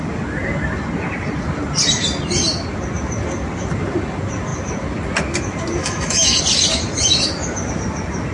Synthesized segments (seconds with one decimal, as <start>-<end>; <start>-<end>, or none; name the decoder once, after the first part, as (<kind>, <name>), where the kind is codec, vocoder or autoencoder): 5.8-6.4 (autoencoder, DAC-VAE)